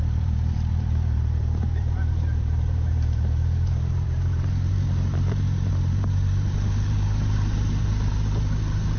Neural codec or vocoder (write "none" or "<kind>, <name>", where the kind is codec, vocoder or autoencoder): vocoder, BigVGAN v2